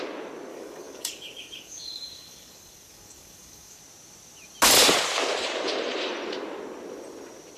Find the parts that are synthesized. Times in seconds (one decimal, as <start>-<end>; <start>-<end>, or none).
0.5-3.8